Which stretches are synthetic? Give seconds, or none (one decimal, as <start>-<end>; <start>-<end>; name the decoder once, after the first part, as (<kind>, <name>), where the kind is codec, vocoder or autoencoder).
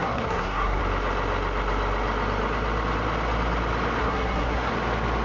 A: 0.0-0.8 (codec, SNAC); 4.0-4.7